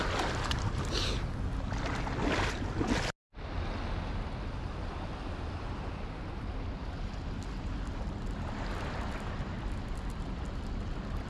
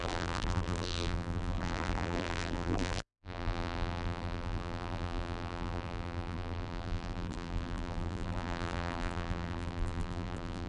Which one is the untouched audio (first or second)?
first